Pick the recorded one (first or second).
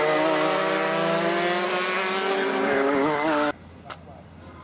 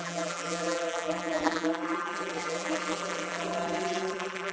first